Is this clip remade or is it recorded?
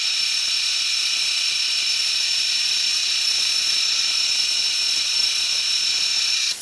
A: remade